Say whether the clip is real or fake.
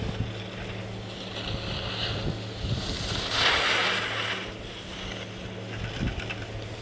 real